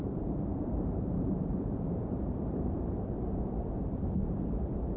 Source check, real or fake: fake